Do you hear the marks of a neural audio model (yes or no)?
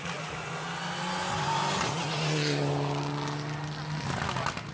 no